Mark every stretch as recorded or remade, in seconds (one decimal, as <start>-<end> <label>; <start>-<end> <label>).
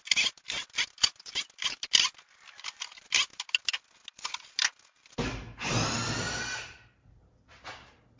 0.0-8.2 recorded